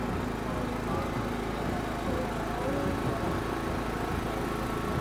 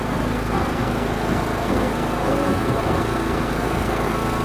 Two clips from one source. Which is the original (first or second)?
first